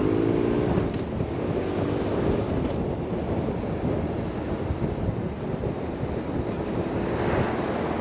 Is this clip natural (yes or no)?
yes